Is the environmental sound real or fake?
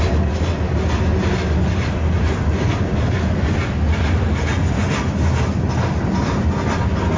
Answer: real